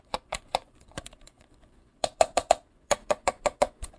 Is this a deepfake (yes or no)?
yes